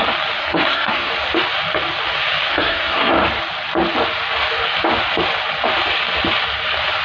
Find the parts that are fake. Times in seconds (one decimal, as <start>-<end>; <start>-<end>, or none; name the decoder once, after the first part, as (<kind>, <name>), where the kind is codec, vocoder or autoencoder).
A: 0.4-1.1 (codec, SNAC); 2.5-3.1